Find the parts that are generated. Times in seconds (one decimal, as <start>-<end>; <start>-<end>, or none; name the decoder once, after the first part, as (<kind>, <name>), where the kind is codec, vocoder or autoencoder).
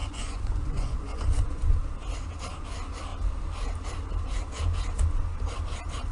0.0-1.8 (vocoder, Vocos)